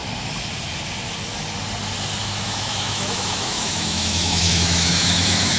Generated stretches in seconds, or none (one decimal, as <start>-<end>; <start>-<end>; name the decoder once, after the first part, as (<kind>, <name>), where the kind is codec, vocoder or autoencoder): 2.2-5.6 (autoencoder, DAC-VAE)